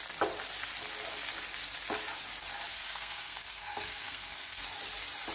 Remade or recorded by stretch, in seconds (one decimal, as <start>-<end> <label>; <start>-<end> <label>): 0.0-2.7 recorded; 2.7-4.6 remade; 4.6-5.3 recorded